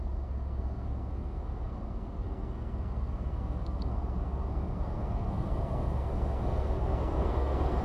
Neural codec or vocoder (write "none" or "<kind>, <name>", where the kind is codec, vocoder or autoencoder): codec, SNAC